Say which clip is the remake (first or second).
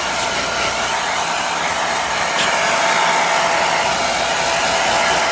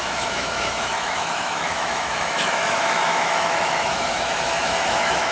second